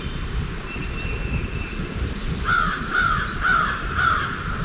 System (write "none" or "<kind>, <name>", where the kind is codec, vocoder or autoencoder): none